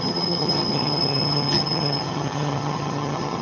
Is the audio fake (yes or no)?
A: yes